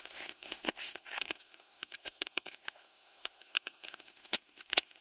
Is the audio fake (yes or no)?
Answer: yes